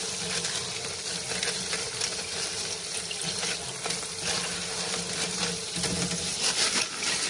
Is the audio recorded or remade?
recorded